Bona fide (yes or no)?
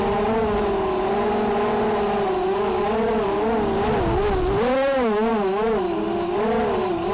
yes